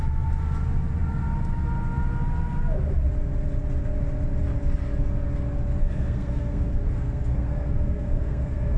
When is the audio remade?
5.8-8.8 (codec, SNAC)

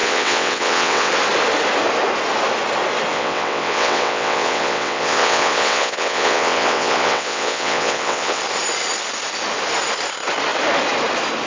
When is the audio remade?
0.0-1.1 (vocoder, WaveNeXt); 3.1-8.4

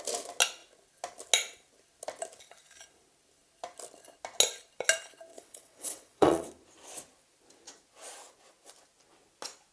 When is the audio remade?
5.3-6.5 (vocoder, WaveNeXt)

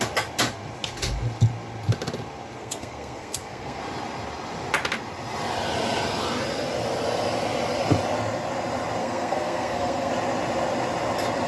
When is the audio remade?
2.6-3.8 (codec, SNAC); 9.0-10.1

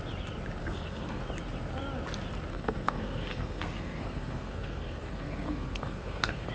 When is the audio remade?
0.6-1.2 (codec, SNAC); 2.5-6.5

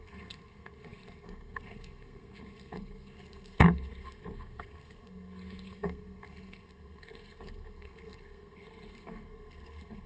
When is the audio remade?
0.0-10.1 (codec, SNAC)